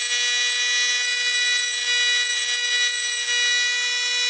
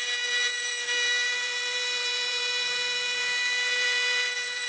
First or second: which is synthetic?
second